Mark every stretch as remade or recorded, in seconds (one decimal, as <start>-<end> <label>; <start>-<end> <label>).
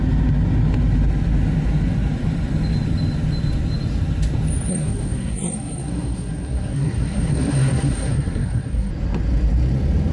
0.0-4.7 recorded; 4.7-8.9 remade; 8.9-10.1 recorded